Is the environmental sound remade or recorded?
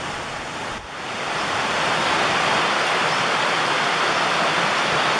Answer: recorded